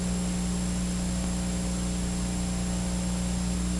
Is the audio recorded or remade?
recorded